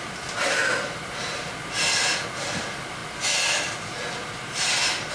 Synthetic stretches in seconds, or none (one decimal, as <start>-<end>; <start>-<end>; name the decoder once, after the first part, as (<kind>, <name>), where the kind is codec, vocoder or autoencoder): none